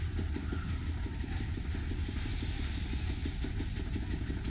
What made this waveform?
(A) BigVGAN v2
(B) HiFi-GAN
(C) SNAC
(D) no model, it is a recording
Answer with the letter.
D